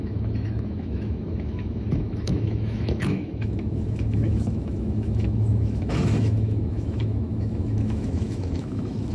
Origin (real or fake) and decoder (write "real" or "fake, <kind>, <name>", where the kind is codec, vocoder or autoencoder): fake, autoencoder, DAC-VAE